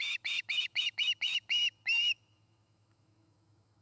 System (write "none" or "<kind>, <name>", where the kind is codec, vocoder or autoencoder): autoencoder, DAC-VAE